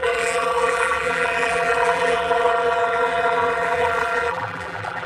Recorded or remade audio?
remade